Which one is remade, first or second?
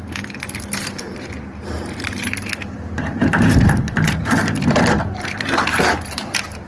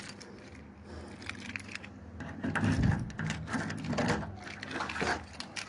first